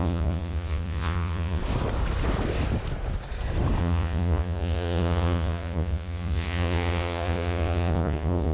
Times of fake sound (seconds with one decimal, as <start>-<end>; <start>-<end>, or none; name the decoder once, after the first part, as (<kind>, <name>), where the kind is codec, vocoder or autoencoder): 0.0-1.6 (vocoder, Vocos); 3.8-8.5